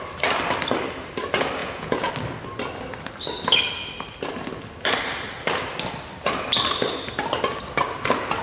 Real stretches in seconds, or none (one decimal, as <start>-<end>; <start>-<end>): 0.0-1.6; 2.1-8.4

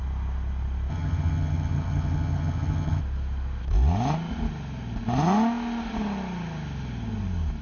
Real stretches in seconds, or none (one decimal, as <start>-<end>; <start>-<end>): 0.0-0.9; 3.0-7.6

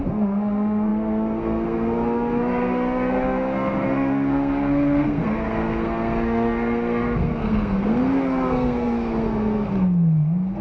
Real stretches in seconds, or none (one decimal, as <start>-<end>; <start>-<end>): none

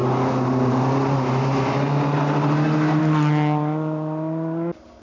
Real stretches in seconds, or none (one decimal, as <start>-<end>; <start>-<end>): 0.0-5.0